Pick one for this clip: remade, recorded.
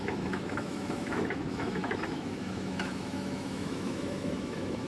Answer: remade